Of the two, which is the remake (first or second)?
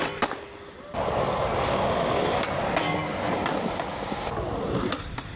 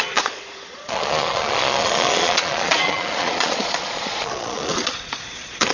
second